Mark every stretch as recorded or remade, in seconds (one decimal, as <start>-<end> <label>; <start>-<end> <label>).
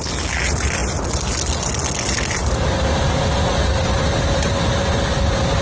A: 0.0-5.6 recorded